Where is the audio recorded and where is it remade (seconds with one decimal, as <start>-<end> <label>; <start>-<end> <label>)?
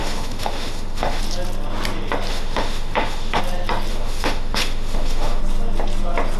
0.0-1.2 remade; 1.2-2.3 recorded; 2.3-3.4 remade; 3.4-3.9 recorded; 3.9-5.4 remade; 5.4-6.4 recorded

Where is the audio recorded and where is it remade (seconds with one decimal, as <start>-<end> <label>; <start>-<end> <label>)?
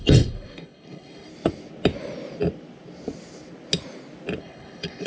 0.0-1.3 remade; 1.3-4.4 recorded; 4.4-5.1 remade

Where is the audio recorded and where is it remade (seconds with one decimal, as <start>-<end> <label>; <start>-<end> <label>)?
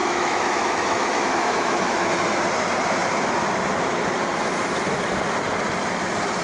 0.0-2.1 remade; 2.1-6.4 recorded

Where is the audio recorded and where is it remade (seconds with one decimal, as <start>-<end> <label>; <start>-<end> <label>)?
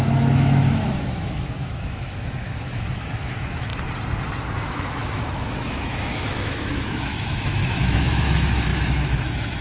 0.0-3.7 remade; 3.7-4.5 recorded; 4.5-9.6 remade